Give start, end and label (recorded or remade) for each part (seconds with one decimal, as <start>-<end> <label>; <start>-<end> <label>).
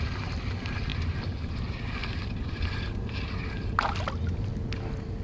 0.0-2.0 recorded; 2.0-2.9 remade; 2.9-5.2 recorded